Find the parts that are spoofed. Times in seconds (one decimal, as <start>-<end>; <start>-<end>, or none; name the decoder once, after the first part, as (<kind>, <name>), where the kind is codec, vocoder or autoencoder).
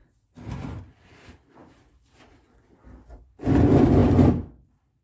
none